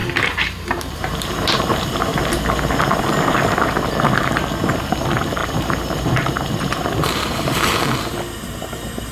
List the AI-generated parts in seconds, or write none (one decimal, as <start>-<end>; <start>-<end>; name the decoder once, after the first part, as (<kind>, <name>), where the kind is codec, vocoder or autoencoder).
0.0-2.2 (vocoder, BigVGAN v2); 5.4-7.8